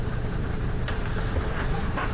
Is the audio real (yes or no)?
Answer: no